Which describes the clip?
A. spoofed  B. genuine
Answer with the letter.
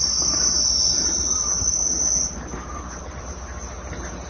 B